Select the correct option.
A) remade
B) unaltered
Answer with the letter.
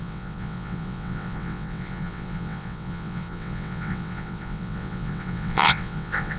A